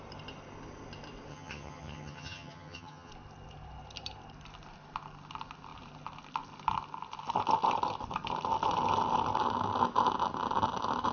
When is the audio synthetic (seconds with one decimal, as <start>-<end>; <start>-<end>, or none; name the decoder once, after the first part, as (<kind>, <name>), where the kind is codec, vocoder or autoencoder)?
1.3-3.1 (vocoder, HiFi-GAN)